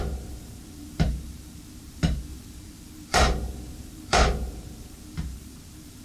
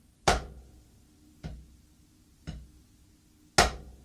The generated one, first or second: first